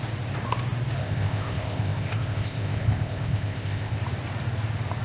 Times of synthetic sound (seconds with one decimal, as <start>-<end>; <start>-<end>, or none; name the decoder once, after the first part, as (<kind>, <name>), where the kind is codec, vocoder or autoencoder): 1.0-4.0 (codec, ZipCodec)